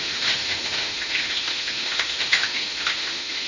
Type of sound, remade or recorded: remade